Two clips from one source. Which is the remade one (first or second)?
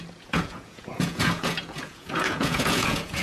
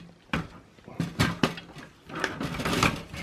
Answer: first